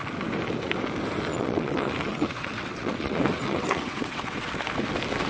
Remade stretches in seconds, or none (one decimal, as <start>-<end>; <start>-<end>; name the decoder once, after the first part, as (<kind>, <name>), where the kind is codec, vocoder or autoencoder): 1.3-4.5 (vocoder, WaveNeXt)